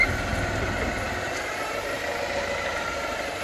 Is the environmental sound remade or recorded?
recorded